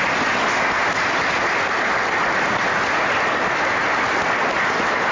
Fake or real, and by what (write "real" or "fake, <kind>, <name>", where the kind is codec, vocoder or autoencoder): real